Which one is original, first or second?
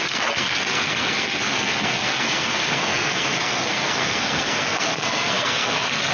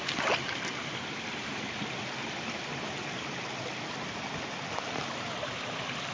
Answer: second